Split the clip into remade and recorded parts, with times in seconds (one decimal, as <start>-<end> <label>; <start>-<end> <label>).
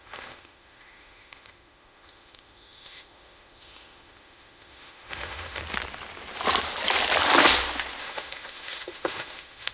0.0-5.6 remade; 5.6-8.0 recorded; 8.0-9.7 remade